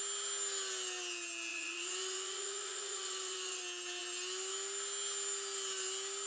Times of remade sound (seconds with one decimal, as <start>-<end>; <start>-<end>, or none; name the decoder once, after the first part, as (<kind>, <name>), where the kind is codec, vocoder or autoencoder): 1.5-3.6 (vocoder, Vocos)

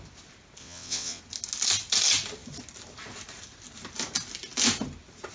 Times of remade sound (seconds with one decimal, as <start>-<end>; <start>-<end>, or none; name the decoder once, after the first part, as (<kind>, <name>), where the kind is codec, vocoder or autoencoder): 0.6-1.2 (vocoder, WaveNeXt)

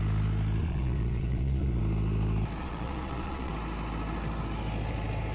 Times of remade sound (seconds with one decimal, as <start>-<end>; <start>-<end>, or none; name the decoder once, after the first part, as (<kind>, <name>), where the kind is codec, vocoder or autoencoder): 0.6-1.8 (vocoder, Vocos); 2.6-3.5

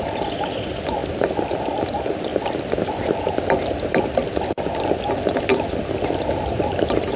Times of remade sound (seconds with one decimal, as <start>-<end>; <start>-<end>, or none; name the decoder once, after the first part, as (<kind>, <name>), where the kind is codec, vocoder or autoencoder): 0.0-1.0 (vocoder, BigVGAN v2); 1.6-2.3; 3.9-5.5